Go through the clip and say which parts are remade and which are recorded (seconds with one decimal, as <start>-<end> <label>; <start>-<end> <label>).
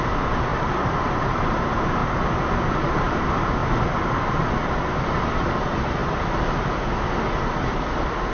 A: 0.0-2.0 remade; 2.0-2.7 recorded; 2.7-6.0 remade; 6.0-7.4 recorded; 7.4-8.3 remade